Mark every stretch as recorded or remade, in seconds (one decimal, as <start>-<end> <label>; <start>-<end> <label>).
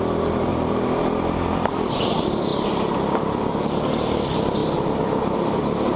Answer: 0.0-0.5 remade; 0.5-1.7 recorded; 1.7-2.5 remade; 2.5-3.2 recorded; 3.2-6.0 remade